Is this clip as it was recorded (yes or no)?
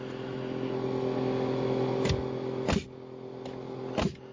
yes